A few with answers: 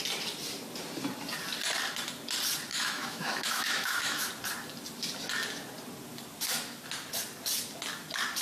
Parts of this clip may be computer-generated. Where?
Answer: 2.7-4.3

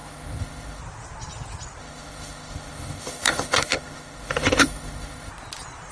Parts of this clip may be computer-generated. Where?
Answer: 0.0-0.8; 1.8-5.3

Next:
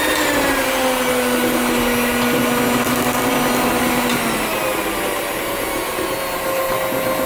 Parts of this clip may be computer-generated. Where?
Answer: none

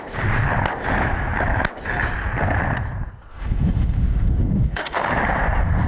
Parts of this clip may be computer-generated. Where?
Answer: 3.3-5.1

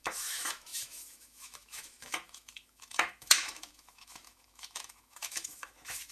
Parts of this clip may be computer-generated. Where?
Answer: 0.0-6.1

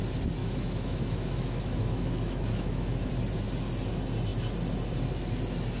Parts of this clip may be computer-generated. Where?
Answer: 0.4-3.1